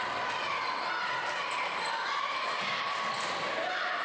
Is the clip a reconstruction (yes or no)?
no